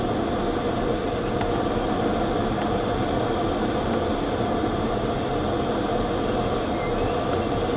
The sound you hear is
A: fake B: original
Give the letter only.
B